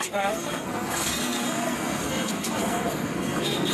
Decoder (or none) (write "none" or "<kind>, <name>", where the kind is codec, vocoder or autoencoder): codec, SNAC